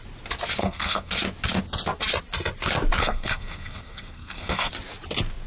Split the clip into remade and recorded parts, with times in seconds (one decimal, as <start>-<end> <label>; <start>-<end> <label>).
0.0-0.6 recorded; 0.6-1.1 remade; 1.1-3.0 recorded; 3.0-4.7 remade; 4.7-5.5 recorded